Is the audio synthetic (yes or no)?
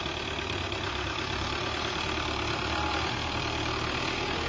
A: yes